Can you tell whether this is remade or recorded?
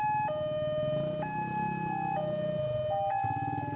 recorded